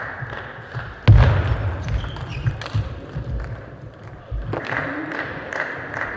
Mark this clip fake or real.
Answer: real